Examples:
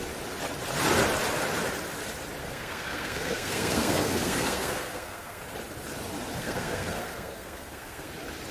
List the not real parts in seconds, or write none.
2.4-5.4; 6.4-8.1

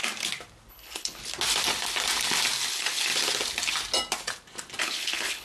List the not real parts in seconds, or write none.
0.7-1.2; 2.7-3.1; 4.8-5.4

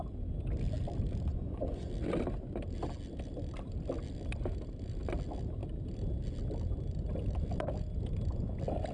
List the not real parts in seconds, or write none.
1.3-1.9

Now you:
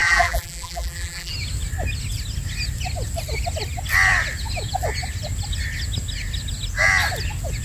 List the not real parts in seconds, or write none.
0.0-1.3

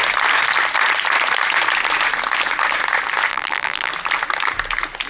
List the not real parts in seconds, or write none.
3.3-3.9

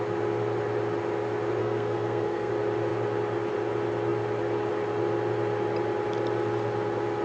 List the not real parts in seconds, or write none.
1.6-2.5